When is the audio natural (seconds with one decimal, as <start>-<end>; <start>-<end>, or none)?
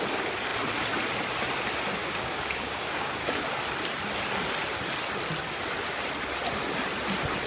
0.0-2.0; 3.4-7.5